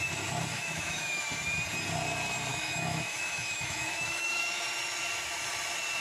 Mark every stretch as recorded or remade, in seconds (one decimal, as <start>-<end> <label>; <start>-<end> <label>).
0.0-0.5 recorded; 0.5-1.2 remade; 1.2-2.5 recorded; 2.5-4.6 remade; 4.6-6.0 recorded